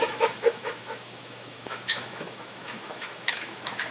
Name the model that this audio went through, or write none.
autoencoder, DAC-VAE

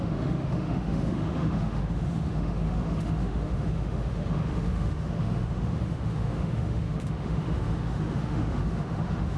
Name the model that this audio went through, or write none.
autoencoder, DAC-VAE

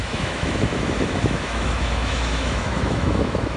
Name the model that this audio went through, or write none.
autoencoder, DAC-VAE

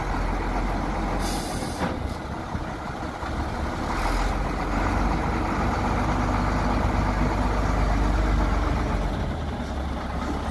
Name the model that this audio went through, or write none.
none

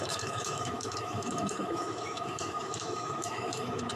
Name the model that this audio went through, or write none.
autoencoder, DAC-VAE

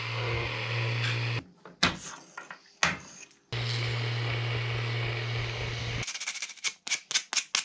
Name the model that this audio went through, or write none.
none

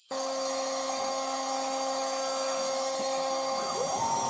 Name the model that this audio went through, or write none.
autoencoder, DAC-VAE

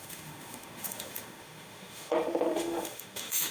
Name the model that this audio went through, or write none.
autoencoder, DAC-VAE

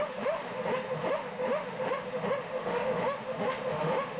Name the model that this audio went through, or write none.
autoencoder, DAC-VAE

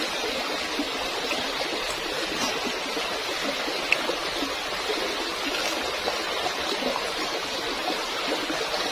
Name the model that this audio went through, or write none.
none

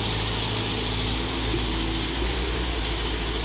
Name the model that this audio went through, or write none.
none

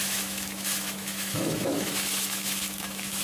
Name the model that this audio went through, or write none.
autoencoder, DAC-VAE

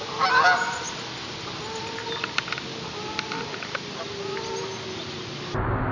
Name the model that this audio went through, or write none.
none